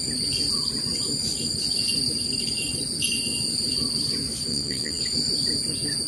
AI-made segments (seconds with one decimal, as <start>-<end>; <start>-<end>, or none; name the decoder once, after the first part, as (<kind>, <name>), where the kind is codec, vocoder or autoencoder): 4.5-5.0 (vocoder, WaveNeXt)